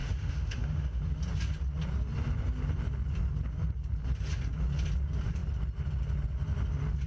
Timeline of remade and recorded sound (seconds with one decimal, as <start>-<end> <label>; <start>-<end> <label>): 0.0-1.0 remade; 1.0-7.1 recorded

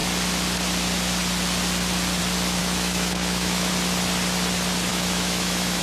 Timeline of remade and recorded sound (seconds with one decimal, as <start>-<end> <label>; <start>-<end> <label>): 0.0-2.6 recorded; 2.6-3.7 remade; 3.7-4.9 recorded; 4.9-5.8 remade

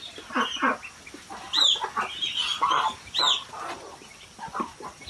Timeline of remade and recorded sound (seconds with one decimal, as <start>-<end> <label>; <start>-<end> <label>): 0.0-5.1 recorded

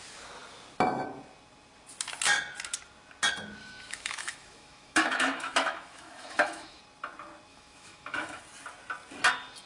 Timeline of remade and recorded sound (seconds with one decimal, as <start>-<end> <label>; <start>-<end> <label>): 0.0-3.6 recorded; 3.6-6.8 remade; 6.8-7.5 recorded; 7.5-8.4 remade; 8.4-9.7 recorded